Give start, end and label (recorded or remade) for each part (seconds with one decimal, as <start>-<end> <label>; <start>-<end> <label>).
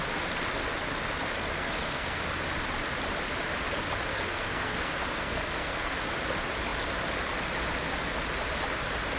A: 0.0-1.5 recorded; 1.5-2.2 remade; 2.2-4.1 recorded; 4.1-5.9 remade; 5.9-9.2 recorded